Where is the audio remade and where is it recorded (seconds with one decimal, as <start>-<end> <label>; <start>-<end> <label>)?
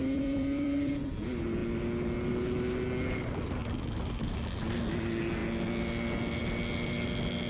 0.0-0.9 remade; 0.9-3.6 recorded; 3.6-4.4 remade; 4.4-7.5 recorded